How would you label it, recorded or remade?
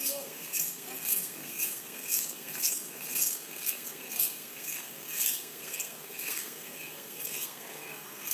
remade